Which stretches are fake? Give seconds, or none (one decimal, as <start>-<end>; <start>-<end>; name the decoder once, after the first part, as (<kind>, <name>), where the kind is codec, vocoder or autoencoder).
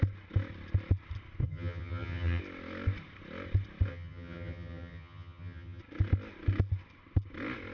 1.4-2.4 (vocoder, HiFi-GAN); 3.9-5.8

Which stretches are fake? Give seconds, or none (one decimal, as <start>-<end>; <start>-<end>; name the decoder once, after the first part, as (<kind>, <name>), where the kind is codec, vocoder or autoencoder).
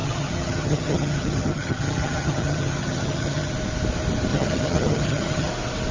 0.0-3.5 (vocoder, HiFi-GAN); 4.3-5.5